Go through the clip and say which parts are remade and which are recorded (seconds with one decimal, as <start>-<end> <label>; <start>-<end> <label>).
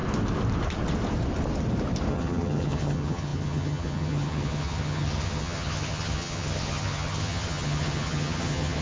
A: 0.0-2.1 recorded; 2.1-8.8 remade